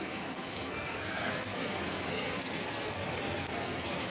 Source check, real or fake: fake